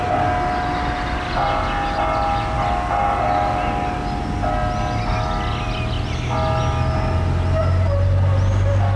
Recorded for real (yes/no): yes